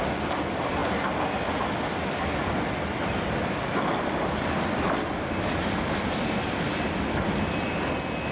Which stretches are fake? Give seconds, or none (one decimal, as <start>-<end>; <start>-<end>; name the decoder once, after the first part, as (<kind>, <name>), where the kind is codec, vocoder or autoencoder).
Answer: none